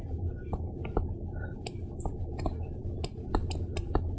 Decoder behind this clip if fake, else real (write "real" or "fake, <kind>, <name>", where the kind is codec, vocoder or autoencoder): real